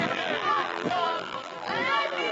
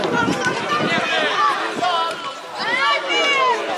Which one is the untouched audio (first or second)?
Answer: second